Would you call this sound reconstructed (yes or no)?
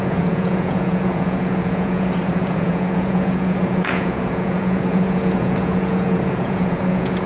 yes